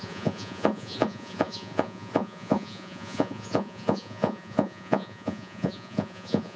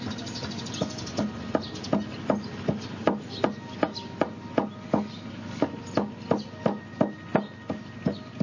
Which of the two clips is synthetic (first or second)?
first